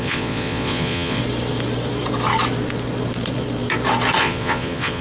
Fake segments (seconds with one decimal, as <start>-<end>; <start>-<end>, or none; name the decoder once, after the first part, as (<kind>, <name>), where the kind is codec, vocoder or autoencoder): 0.0-1.2 (vocoder, Vocos); 4.2-5.0